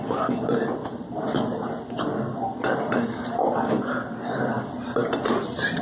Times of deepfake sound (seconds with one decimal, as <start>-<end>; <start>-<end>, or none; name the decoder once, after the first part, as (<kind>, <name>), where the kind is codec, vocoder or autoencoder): none